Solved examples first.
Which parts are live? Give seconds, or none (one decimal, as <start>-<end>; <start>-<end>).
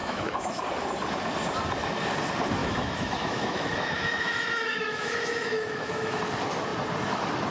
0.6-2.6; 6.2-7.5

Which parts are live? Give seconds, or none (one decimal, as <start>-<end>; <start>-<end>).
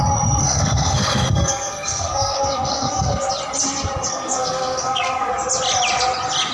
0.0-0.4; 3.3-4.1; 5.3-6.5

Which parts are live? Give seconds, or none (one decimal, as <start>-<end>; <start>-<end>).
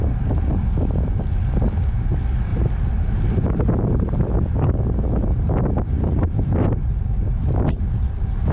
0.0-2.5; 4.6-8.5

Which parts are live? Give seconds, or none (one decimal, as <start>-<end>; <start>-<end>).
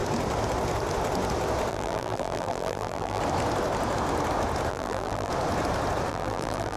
0.0-1.7; 3.2-4.7; 5.3-6.1